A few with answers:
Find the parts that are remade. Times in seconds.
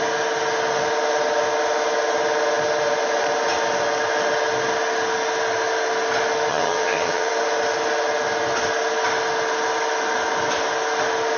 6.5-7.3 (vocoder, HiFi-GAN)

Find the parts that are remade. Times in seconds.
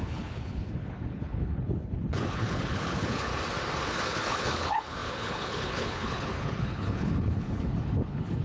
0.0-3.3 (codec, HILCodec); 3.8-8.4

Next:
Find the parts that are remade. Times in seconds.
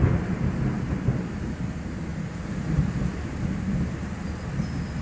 none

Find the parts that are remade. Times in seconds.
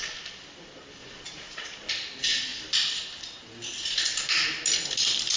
1.0-1.9 (vocoder, Vocos)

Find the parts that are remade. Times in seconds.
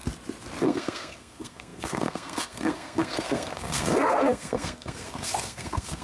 0.6-6.0 (codec, SNAC)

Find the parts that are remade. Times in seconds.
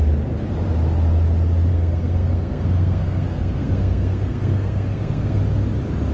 1.7-5.4 (codec, SNAC)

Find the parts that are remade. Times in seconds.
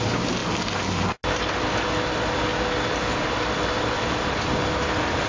none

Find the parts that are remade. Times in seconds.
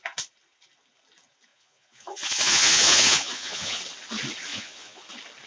1.5-3.8 (vocoder, Vocos); 4.5-5.0